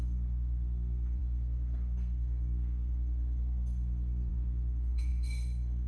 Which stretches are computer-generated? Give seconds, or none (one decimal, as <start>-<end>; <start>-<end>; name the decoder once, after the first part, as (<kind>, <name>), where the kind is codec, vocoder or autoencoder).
0.0-5.9 (codec, SNAC)